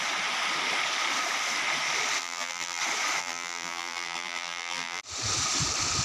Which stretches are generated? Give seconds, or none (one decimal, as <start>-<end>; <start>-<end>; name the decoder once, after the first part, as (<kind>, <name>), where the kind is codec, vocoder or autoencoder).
2.2-2.8 (vocoder, BigVGAN v2); 3.2-5.0